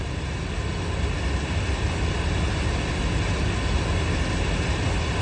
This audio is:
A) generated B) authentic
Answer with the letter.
B